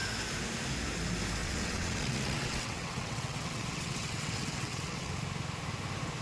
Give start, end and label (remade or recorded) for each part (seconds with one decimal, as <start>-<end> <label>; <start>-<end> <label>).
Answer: 0.0-1.4 recorded; 1.4-5.1 remade; 5.1-6.2 recorded